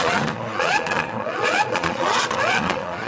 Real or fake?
fake